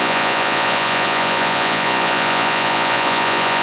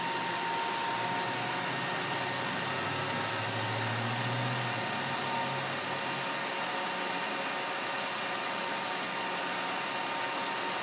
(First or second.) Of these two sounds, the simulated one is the first